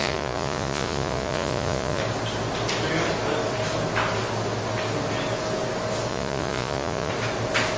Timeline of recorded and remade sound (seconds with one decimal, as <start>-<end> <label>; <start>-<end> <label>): 0.0-2.0 remade; 2.0-6.1 recorded; 6.1-7.1 remade; 7.1-7.8 recorded